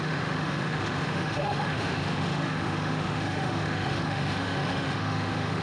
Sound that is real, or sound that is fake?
fake